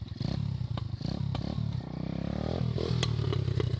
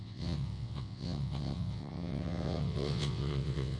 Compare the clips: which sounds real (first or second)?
first